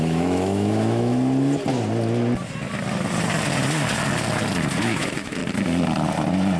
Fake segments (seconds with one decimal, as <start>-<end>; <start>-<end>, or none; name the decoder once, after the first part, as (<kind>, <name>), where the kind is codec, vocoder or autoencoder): 0.0-1.1 (autoencoder, DAC-VAE); 4.8-5.4

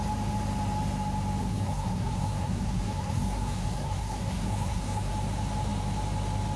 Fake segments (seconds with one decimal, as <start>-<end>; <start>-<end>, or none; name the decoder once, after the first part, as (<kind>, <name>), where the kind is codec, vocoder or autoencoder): 1.4-5.1 (codec, SNAC)

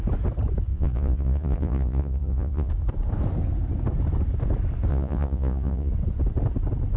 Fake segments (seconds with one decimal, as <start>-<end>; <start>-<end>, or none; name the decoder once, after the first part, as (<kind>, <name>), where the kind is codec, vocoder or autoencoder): 0.7-2.7 (vocoder, Vocos); 4.9-5.9

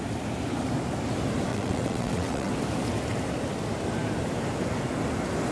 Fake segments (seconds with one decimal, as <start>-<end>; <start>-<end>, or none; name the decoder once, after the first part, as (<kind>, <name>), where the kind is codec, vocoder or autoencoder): 1.5-2.5 (vocoder, WaveNeXt)

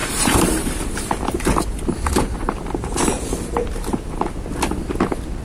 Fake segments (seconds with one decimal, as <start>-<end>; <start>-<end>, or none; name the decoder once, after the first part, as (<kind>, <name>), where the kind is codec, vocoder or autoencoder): 0.0-3.2 (vocoder, BigVGAN v2); 3.6-4.3

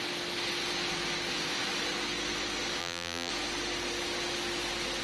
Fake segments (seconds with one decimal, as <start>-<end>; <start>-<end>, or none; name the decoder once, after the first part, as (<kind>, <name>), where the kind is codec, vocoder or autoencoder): 2.8-3.3 (vocoder, BigVGAN v2)

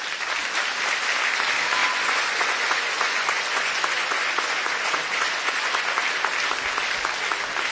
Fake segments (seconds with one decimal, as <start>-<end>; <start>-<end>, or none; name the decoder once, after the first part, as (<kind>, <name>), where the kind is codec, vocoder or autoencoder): 1.8-5.8 (vocoder, Vocos)

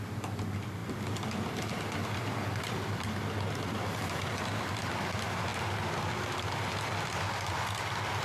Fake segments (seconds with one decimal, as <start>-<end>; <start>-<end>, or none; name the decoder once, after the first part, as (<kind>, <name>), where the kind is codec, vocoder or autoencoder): none